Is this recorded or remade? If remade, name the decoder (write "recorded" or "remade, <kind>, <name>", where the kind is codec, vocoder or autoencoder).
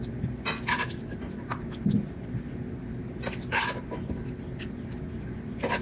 recorded